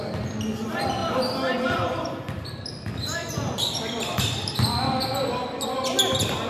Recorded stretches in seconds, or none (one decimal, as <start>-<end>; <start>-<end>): 0.0-1.0; 4.2-6.5